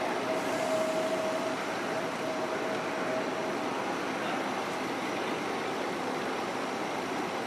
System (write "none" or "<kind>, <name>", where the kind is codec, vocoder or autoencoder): none